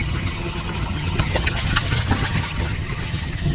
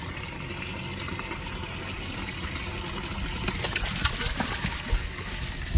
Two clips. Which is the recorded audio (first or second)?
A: second